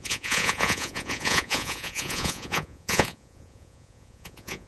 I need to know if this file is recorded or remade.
remade